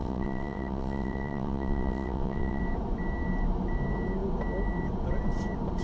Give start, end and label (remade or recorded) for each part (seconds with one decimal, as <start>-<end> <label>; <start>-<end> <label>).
0.0-2.6 remade; 2.6-5.8 recorded